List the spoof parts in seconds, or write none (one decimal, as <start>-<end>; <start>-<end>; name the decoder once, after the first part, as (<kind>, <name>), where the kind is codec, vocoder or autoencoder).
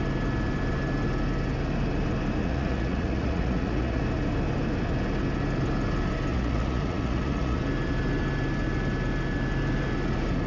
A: 2.4-4.0 (vocoder, Vocos); 6.3-7.6